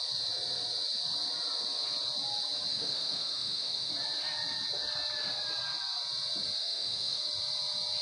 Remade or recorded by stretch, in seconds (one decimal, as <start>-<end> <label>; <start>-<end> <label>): 0.0-2.7 recorded; 2.7-3.9 remade; 3.9-6.6 recorded; 6.6-7.2 remade; 7.2-8.0 recorded